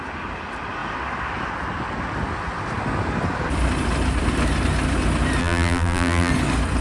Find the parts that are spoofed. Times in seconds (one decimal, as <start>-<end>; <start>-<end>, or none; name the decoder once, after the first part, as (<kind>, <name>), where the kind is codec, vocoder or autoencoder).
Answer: 5.4-6.3 (vocoder, BigVGAN v2)